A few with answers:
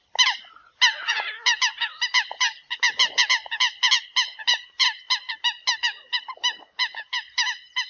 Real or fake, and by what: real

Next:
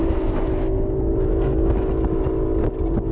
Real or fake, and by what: real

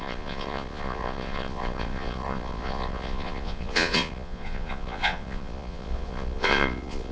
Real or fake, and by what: fake, vocoder, Vocos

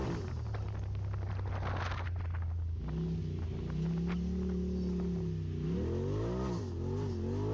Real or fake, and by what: real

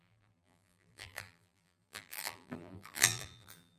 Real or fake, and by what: fake, vocoder, BigVGAN v2